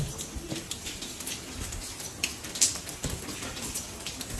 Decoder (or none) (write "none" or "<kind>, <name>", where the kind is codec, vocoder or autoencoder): none